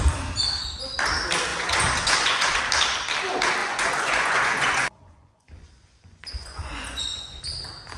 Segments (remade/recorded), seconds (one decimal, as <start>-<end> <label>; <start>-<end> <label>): 0.0-1.5 recorded; 1.5-2.6 remade; 2.6-3.6 recorded; 3.6-7.4 remade; 7.4-8.0 recorded